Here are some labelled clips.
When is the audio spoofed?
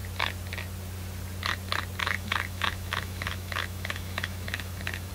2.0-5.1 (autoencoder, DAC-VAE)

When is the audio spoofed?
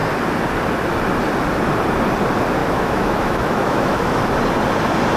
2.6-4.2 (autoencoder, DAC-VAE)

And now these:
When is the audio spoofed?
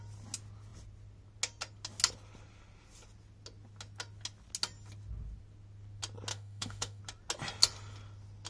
6.3-7.0 (autoencoder, DAC-VAE)